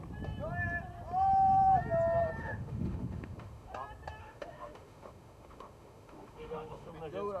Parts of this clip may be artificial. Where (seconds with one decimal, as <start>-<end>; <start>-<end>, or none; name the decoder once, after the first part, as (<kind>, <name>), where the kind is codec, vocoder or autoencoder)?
2.4-3.7 (autoencoder, DAC-VAE); 4.2-6.9